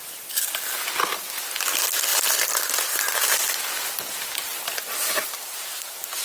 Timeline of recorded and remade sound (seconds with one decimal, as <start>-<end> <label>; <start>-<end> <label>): 0.0-2.1 recorded; 2.1-5.6 remade; 5.6-6.2 recorded

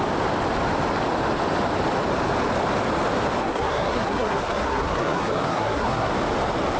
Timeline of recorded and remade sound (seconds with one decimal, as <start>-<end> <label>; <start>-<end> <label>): 0.0-3.4 recorded; 3.4-6.1 remade; 6.1-6.8 recorded